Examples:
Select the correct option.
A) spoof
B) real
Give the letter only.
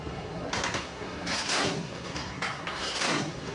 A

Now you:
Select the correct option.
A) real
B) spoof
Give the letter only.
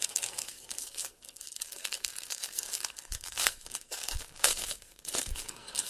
B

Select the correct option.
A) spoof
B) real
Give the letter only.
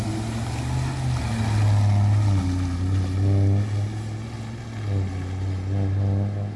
B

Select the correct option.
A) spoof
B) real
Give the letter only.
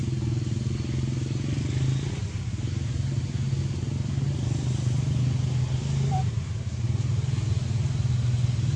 B